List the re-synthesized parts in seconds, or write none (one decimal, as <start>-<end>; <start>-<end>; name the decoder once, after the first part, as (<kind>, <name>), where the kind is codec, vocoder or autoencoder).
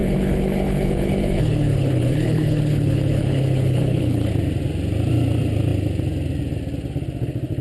0.0-4.3 (codec, HILCodec)